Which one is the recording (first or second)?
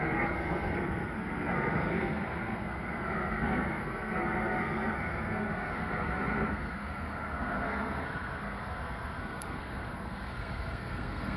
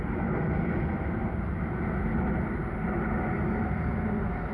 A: second